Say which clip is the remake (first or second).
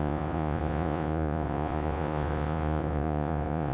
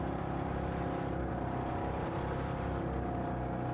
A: first